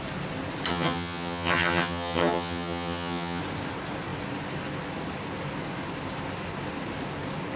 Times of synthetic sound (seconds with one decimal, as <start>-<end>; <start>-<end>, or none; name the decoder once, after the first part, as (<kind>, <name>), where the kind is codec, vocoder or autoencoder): 0.7-3.4 (vocoder, HiFi-GAN)